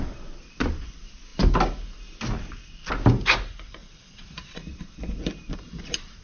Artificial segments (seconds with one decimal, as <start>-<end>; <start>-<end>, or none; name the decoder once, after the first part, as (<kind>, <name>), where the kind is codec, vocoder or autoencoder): 3.8-4.6 (vocoder, Vocos)